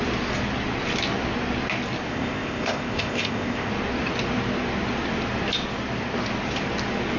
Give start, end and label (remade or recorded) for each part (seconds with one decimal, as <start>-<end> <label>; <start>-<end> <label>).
0.0-2.1 recorded; 2.1-3.7 remade; 3.7-7.2 recorded